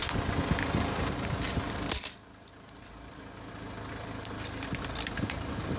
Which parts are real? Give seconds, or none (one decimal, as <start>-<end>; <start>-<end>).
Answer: 0.0-5.8